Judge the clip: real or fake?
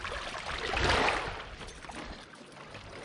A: real